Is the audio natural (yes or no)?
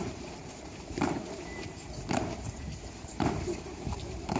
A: no